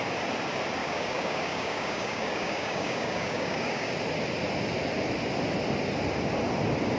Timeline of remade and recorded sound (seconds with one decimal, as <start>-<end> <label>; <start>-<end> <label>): 0.0-0.8 recorded; 0.8-3.9 remade; 3.9-7.0 recorded